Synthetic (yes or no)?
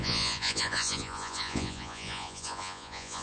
yes